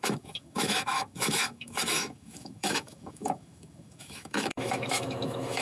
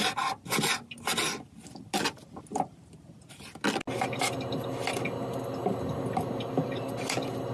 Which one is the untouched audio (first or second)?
second